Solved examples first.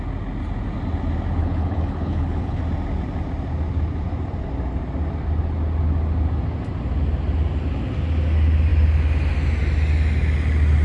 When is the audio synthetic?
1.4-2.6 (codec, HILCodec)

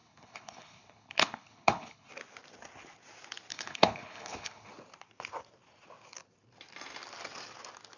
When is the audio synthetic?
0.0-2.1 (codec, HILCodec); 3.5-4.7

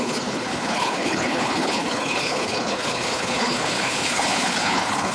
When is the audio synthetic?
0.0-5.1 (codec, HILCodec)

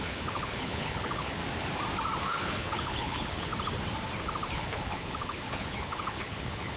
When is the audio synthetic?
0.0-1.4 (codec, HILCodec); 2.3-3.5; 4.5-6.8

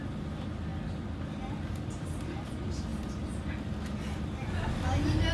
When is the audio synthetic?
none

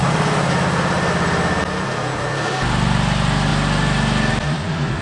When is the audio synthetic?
none

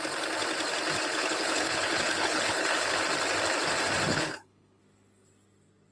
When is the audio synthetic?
1.1-3.0 (codec, HILCodec); 4.1-4.8